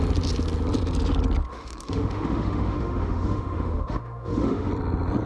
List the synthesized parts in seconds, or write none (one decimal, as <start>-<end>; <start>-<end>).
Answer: 1.5-4.7